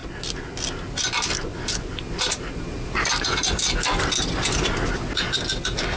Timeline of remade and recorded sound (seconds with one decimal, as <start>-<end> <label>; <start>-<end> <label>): 0.0-1.5 recorded; 1.5-4.3 remade; 4.3-6.0 recorded